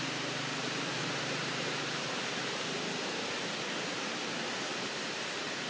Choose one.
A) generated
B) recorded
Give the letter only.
A